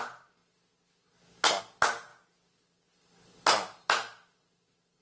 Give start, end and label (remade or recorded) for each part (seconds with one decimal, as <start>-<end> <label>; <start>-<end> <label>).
0.0-5.0 recorded